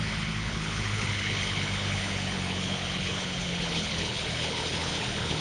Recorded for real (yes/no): no